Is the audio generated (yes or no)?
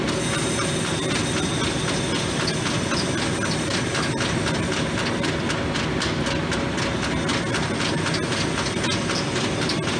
no